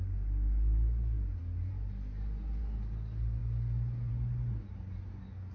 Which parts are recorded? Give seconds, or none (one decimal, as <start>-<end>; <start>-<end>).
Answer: 0.0-5.5